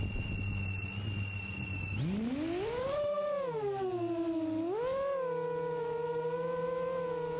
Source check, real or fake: real